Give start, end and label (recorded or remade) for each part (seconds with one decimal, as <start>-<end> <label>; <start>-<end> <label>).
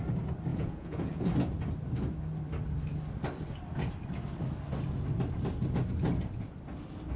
0.0-0.5 recorded; 0.5-1.3 remade; 1.3-7.2 recorded